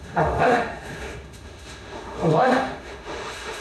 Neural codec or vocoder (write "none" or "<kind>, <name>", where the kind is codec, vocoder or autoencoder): autoencoder, DAC-VAE